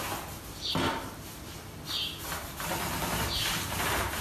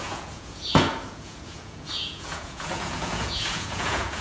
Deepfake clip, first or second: second